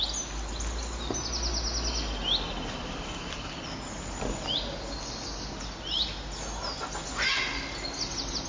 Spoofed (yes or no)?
no